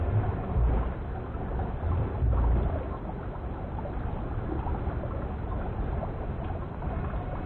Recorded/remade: recorded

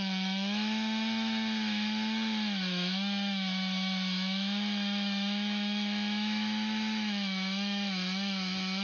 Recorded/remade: remade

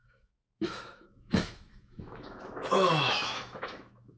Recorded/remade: remade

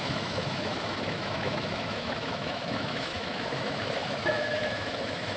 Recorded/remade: remade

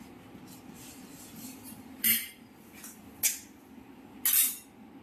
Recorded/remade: recorded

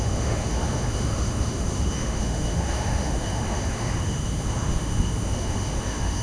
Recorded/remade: remade